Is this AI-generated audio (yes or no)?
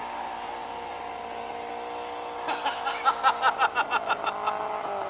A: no